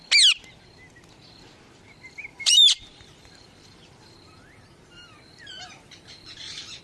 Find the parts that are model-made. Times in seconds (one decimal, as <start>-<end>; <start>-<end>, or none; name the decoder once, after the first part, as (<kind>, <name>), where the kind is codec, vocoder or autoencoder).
2.3-6.8 (vocoder, BigVGAN v2)